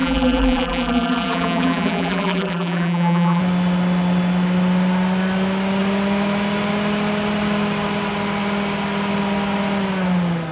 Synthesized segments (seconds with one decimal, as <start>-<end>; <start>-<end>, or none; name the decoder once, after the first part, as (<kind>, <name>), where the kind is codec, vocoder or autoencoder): 0.0-3.4 (vocoder, BigVGAN v2)